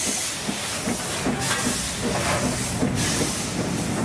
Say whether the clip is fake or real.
real